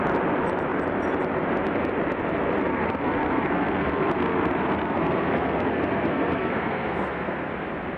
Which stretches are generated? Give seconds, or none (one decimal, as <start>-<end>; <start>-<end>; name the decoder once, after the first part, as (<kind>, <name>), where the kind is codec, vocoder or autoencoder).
2.7-7.5 (codec, SNAC)